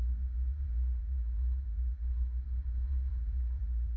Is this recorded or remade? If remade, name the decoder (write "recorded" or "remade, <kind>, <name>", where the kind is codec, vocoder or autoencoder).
remade, vocoder, BigVGAN v2